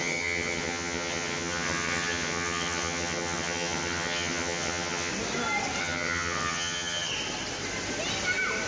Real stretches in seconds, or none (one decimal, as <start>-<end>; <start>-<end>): 5.1-5.8; 7.1-8.7